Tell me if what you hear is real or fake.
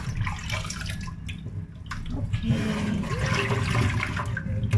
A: real